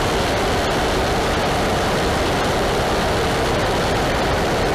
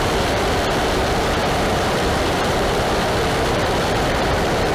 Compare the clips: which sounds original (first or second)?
first